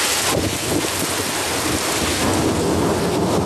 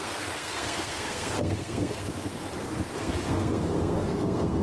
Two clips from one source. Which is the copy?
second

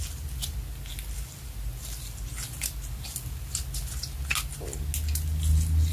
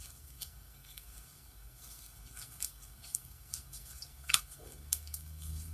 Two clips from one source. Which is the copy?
second